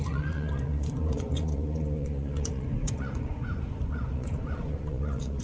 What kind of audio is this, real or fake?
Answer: fake